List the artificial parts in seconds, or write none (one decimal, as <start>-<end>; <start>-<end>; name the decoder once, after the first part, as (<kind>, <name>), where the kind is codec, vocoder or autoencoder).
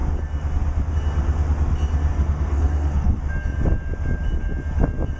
2.1-3.2 (codec, SNAC)